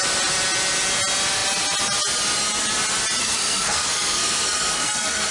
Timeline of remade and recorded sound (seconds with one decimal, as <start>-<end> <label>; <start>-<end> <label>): 0.0-3.2 recorded; 3.2-5.3 remade

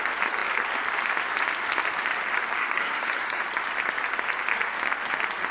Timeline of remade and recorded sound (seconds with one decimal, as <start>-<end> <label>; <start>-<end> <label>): 0.0-2.6 recorded; 2.6-3.4 remade; 3.4-5.5 recorded